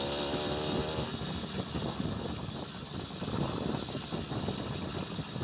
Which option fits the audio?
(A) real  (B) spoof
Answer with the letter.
A